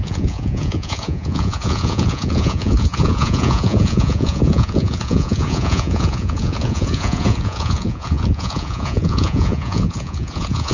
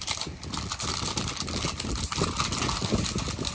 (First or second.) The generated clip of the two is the first